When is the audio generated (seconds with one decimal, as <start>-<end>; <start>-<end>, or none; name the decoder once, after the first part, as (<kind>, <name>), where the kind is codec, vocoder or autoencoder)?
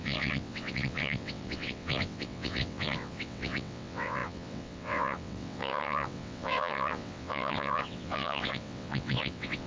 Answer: 0.0-9.7 (vocoder, WaveNeXt)